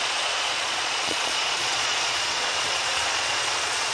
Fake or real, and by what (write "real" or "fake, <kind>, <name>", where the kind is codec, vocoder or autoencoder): fake, vocoder, Vocos